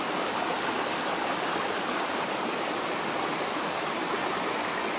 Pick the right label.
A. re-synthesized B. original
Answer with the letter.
B